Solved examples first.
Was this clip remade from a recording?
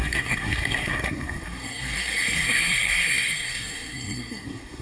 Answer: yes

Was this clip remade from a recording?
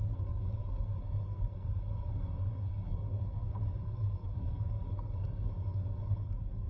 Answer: yes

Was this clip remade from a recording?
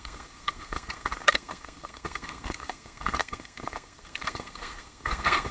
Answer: yes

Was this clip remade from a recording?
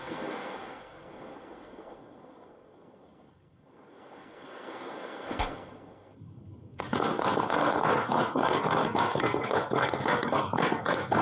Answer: yes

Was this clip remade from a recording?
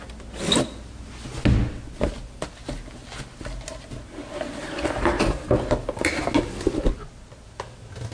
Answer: no